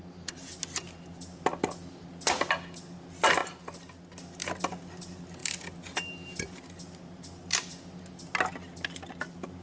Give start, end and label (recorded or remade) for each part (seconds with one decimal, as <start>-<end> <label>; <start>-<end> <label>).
0.0-9.6 recorded